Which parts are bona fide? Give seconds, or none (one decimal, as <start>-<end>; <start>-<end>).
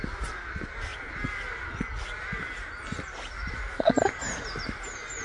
0.0-5.2